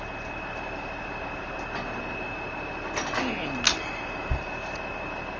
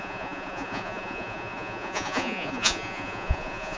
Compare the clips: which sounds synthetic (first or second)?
second